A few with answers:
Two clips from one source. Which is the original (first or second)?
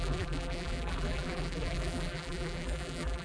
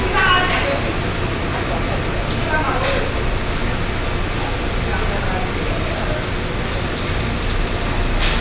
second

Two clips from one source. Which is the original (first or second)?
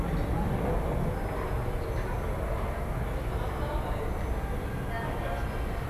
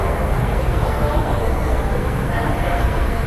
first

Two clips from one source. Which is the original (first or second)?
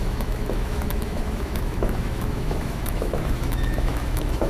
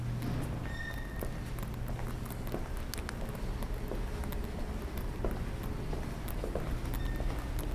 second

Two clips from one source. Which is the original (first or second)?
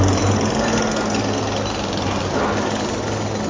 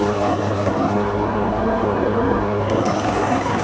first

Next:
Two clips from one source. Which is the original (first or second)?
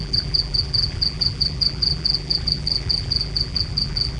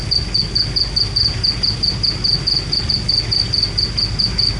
second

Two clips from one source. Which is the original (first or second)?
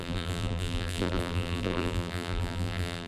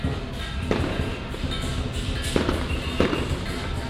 second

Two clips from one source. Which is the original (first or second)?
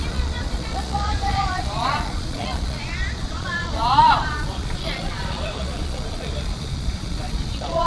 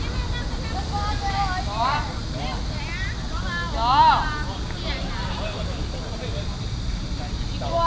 second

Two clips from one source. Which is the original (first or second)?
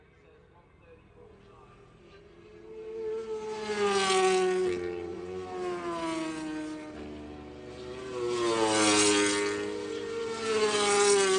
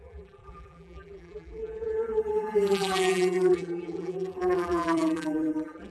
first